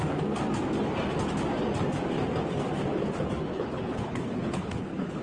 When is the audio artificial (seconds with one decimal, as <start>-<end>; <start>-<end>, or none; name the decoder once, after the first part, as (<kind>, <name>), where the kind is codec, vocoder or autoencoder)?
3.5-5.2 (codec, HILCodec)